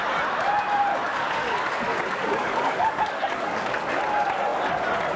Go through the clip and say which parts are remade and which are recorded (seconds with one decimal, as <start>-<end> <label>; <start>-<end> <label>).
0.0-0.9 recorded; 0.9-4.0 remade; 4.0-5.2 recorded